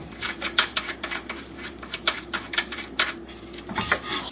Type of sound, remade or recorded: remade